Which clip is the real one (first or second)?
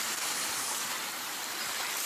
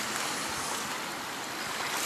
second